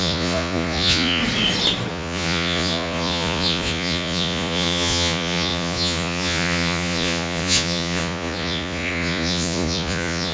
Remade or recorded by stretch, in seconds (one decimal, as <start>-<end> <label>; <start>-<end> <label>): 0.0-1.2 remade; 1.2-1.9 recorded; 1.9-10.3 remade